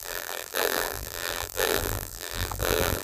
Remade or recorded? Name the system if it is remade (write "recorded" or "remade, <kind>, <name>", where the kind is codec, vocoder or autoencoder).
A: remade, vocoder, BigVGAN v2